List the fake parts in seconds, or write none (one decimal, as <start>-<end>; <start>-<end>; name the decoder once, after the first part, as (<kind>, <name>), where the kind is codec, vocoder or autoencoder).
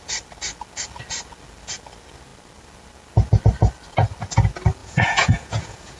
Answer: 4.8-6.0 (vocoder, Vocos)